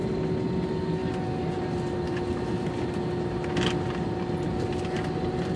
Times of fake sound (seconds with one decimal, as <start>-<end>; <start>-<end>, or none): none